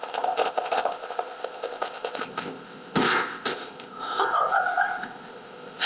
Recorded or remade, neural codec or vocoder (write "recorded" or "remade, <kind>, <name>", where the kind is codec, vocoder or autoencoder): remade, codec, ZipCodec